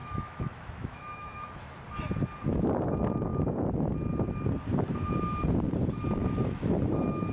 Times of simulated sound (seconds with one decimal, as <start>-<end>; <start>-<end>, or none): 0.0-1.8; 6.2-6.8